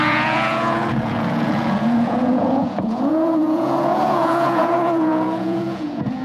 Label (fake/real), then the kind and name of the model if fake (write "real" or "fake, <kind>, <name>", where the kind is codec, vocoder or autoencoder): fake, vocoder, Vocos